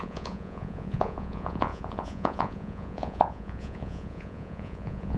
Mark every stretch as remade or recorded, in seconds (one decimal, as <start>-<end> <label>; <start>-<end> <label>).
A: 0.0-5.2 remade